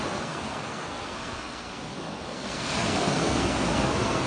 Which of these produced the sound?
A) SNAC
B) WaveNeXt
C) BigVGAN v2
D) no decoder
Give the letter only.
A